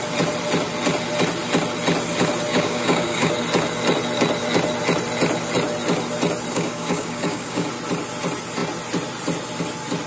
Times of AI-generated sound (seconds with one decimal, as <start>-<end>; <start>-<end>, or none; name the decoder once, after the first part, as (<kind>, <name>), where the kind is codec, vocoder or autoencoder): 2.5-3.3 (codec, DAC); 6.5-7.7